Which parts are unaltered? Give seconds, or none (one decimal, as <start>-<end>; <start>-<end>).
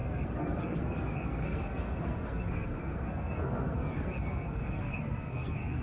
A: none